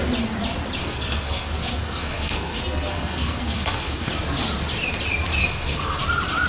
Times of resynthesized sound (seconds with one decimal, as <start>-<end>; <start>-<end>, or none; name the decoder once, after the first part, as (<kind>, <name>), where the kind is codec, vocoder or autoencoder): 0.8-4.1 (codec, SNAC); 5.4-6.0